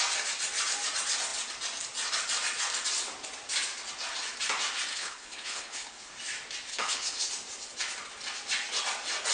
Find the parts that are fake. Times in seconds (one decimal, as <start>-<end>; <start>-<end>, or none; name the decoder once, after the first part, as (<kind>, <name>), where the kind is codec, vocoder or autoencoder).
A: 4.9-6.1 (codec, HILCodec); 6.7-7.3

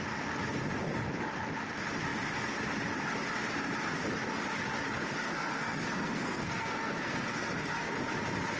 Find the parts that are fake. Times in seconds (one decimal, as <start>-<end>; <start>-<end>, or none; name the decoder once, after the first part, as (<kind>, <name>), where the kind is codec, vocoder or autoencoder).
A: 5.3-7.9 (codec, SNAC)

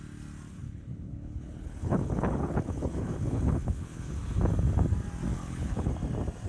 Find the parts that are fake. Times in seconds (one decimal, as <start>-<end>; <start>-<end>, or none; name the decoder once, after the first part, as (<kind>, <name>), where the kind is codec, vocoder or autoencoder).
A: 0.5-4.4 (codec, HILCodec); 5.3-5.9

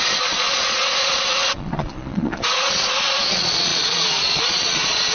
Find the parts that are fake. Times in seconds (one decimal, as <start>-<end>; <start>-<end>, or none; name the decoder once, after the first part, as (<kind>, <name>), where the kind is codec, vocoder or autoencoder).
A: 0.0-5.1 (vocoder, Vocos)